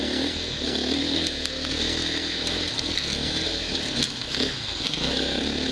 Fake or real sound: fake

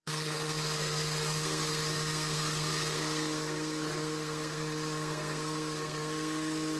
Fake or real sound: fake